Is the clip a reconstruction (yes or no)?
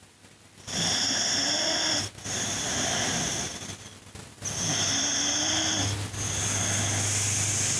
no